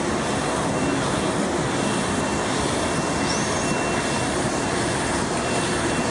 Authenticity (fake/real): real